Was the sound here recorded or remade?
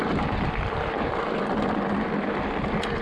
recorded